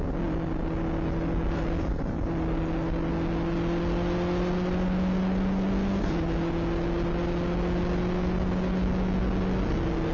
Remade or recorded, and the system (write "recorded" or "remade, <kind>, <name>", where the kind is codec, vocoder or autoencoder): recorded